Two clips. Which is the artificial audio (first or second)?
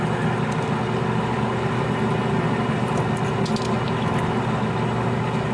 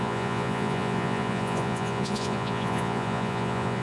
second